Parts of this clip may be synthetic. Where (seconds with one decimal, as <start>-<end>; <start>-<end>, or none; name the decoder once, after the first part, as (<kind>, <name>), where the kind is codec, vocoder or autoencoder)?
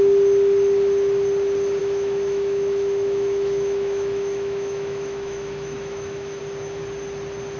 1.8-6.4 (autoencoder, DAC-VAE)